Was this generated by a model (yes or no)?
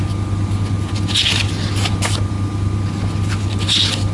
no